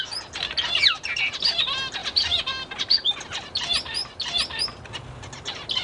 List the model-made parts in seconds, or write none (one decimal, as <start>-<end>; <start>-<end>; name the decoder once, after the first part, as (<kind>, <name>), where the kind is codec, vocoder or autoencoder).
none